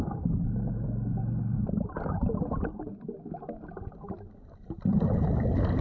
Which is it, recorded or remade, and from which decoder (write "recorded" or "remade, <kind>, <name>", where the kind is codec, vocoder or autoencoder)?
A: recorded